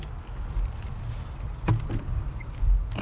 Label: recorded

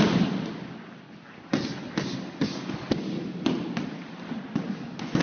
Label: recorded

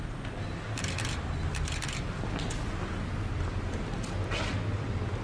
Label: recorded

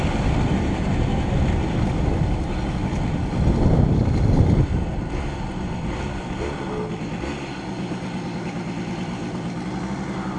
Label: recorded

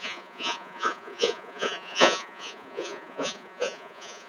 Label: remade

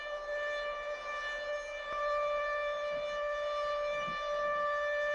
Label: recorded